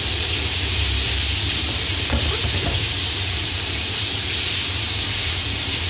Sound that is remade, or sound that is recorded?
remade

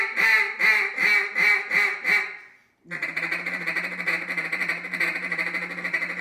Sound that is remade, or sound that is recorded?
recorded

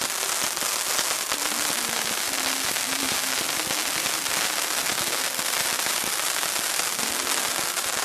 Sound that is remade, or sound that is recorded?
remade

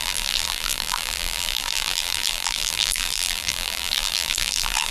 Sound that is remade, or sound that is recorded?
remade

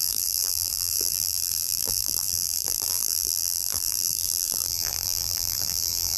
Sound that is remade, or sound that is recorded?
remade